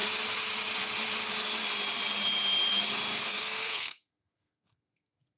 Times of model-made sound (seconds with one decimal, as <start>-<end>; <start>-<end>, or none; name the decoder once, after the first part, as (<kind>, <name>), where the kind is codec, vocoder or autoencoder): 3.2-5.4 (codec, SNAC)